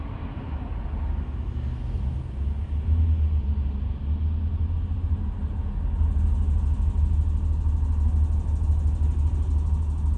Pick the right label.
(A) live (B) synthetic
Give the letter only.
A